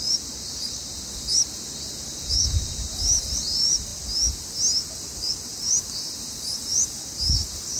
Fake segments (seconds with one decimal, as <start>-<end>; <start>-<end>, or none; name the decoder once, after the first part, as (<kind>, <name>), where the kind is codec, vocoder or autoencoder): 0.0-0.8 (vocoder, BigVGAN v2); 2.3-3.9; 5.2-7.8

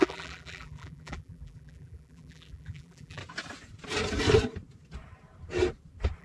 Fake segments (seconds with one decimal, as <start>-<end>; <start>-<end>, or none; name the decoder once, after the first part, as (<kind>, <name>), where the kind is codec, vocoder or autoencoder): 0.0-3.2 (vocoder, BigVGAN v2)

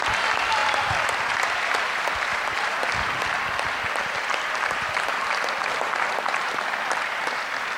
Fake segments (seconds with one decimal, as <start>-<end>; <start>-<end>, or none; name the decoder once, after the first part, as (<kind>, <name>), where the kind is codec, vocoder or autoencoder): 2.3-7.0 (vocoder, BigVGAN v2)

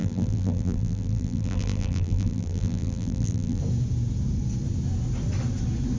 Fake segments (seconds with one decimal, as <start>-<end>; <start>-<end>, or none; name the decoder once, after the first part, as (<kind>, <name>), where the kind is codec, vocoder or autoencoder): 0.0-3.6 (vocoder, BigVGAN v2)